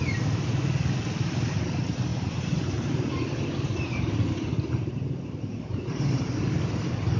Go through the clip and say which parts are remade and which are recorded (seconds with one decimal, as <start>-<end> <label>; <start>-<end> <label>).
0.0-2.1 recorded; 2.1-6.4 remade; 6.4-7.2 recorded

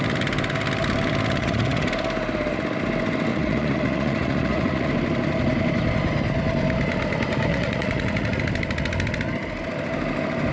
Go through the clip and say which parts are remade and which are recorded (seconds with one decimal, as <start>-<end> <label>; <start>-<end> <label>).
0.0-1.4 recorded; 1.4-1.9 remade; 1.9-3.3 recorded; 3.3-4.9 remade; 4.9-7.5 recorded; 7.5-8.4 remade; 8.4-10.5 recorded

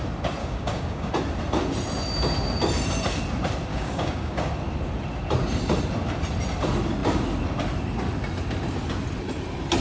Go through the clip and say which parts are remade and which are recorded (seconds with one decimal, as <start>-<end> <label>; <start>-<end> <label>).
0.0-0.4 recorded; 0.4-1.1 remade; 1.1-3.7 recorded; 3.7-4.5 remade; 4.5-9.8 recorded

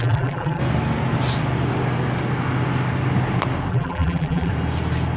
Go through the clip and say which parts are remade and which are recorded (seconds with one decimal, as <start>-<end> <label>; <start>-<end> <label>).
0.0-0.6 remade; 0.6-3.7 recorded; 3.7-4.5 remade; 4.5-5.2 recorded

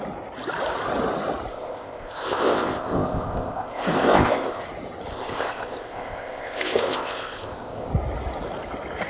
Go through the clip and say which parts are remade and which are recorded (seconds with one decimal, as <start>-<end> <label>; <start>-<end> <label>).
0.0-1.5 recorded; 1.5-4.6 remade; 4.6-5.1 recorded; 5.1-7.9 remade; 7.9-9.1 recorded

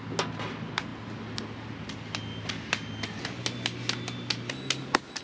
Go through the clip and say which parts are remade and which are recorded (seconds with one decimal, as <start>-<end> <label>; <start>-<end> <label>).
0.0-5.2 recorded

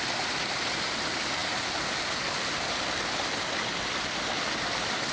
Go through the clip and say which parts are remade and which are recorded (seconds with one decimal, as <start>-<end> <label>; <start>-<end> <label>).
0.0-5.1 recorded

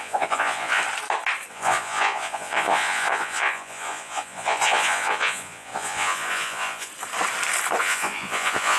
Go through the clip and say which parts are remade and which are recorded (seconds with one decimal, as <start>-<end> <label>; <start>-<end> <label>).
0.0-0.8 remade; 0.8-1.5 recorded; 1.5-6.9 remade; 6.9-7.8 recorded; 7.8-8.8 remade